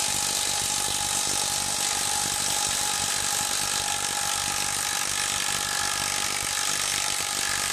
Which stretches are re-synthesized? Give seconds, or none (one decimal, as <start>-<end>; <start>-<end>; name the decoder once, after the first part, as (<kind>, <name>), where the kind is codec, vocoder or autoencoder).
6.9-7.7 (vocoder, BigVGAN v2)